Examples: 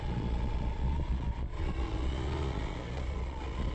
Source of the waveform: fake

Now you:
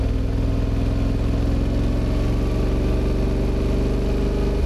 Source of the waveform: real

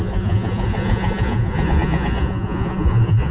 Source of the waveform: fake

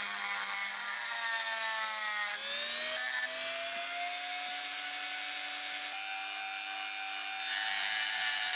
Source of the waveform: real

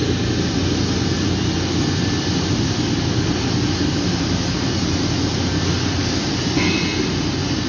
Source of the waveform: real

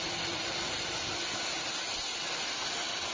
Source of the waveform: real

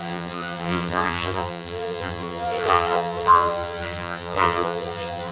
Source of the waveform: fake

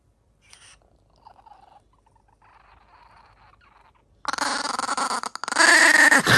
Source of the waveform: real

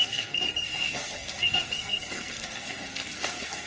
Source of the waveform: fake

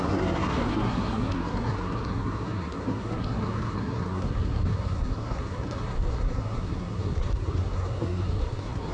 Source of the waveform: fake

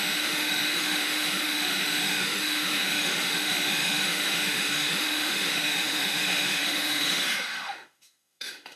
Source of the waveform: fake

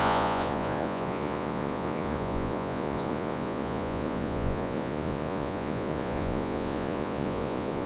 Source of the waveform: fake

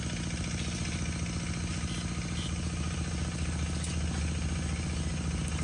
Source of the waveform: real